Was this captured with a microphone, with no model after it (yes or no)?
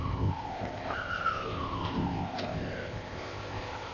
no